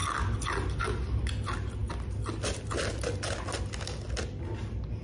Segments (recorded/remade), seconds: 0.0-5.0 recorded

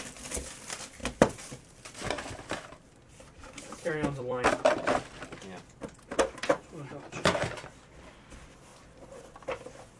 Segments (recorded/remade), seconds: 0.0-1.0 recorded; 1.0-5.1 remade; 5.1-8.7 recorded; 8.7-9.2 remade; 9.2-10.0 recorded